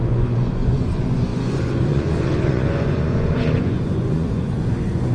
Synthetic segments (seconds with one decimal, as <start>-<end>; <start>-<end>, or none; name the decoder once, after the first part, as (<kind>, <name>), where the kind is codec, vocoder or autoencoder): 0.0-5.1 (vocoder, Vocos)